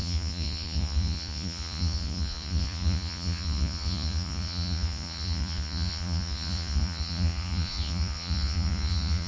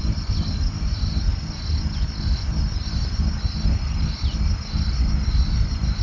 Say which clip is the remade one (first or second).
first